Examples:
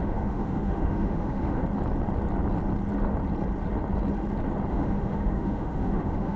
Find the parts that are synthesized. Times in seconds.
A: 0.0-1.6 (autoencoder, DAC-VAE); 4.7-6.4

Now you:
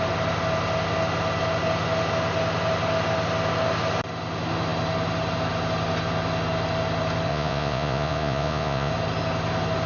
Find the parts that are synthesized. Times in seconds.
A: 7.3-8.9 (vocoder, Vocos)

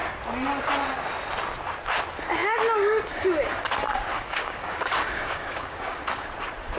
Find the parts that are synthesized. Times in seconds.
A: 4.1-6.0 (codec, DAC)

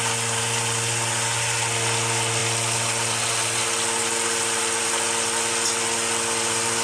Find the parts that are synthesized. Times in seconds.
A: none

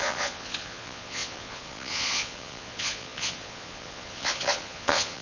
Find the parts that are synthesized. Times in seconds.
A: 0.0-5.2 (vocoder, Vocos)

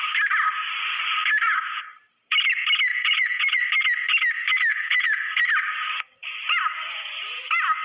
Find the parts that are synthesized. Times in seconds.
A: 2.9-3.6 (vocoder, Vocos); 4.7-5.4

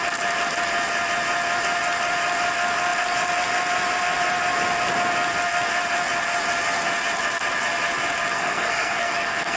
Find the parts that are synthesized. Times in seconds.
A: 8.3-9.6 (codec, SNAC)